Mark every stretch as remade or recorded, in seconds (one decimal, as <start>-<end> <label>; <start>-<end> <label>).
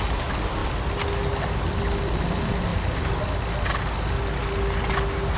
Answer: 0.0-5.4 recorded